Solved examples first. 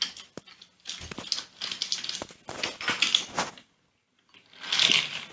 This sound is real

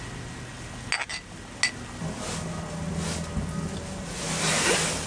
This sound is real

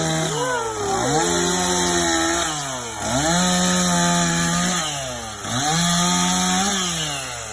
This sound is real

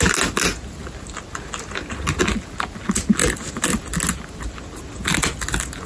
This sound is real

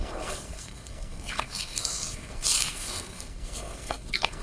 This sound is fake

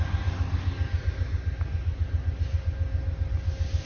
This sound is real